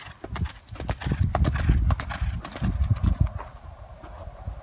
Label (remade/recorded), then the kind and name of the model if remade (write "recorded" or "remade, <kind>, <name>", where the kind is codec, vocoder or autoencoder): recorded